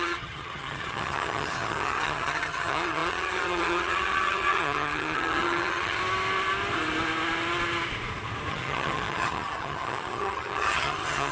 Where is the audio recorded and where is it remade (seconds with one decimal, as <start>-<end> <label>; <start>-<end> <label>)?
0.0-6.0 remade; 6.0-8.5 recorded; 8.5-11.3 remade